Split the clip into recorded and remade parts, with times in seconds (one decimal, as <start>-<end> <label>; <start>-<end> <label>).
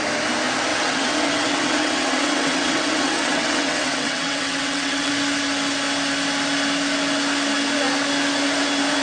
0.0-0.7 recorded; 0.7-5.1 remade; 5.1-9.0 recorded